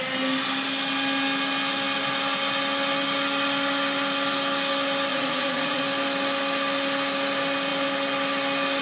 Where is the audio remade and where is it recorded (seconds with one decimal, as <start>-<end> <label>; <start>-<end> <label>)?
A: 0.0-5.1 recorded; 5.1-5.8 remade; 5.8-8.8 recorded